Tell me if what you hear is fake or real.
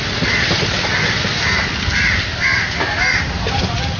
real